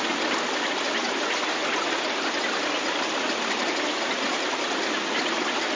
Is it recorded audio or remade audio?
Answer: recorded